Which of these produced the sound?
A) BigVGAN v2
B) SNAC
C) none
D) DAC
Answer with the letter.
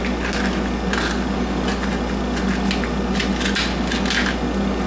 C